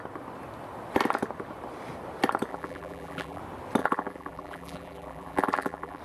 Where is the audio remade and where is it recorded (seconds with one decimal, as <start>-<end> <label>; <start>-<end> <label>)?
0.0-2.5 recorded; 2.5-3.4 remade; 3.4-3.8 recorded; 3.8-6.0 remade